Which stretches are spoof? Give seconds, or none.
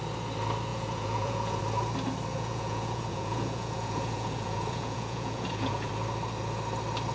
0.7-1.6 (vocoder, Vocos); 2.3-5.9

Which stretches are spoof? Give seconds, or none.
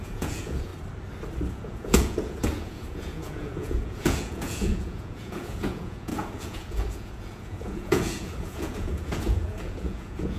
0.0-0.7 (vocoder, Vocos); 1.5-10.4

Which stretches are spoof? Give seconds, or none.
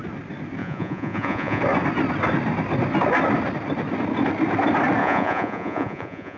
0.6-1.6 (vocoder, Vocos); 5.0-6.4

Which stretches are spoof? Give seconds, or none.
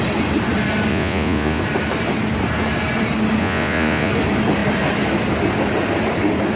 0.9-1.6 (vocoder, Vocos); 3.4-4.1